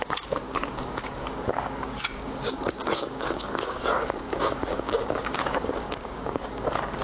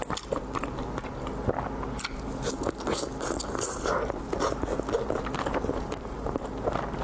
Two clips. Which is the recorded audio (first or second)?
second